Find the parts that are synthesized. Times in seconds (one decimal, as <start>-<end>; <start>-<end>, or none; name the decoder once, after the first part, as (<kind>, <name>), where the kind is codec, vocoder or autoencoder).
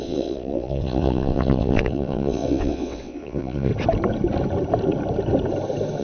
0.0-3.7 (vocoder, WaveNeXt)